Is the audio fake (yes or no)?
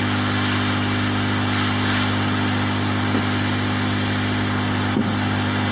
no